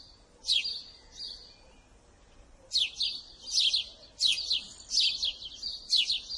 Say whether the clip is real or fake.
real